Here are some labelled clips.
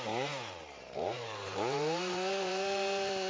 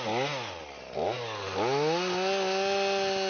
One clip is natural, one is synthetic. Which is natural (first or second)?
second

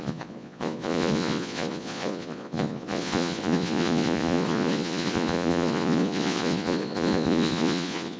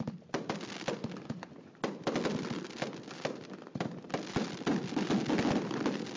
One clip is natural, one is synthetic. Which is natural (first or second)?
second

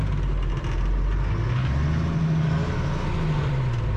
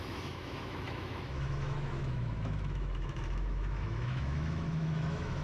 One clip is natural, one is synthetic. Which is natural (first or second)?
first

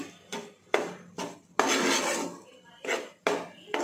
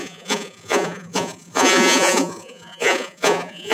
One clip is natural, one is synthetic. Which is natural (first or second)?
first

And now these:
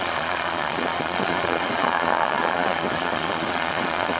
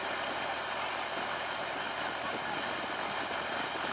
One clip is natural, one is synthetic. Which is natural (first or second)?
second